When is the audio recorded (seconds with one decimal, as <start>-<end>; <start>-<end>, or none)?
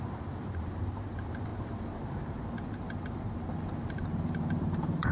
none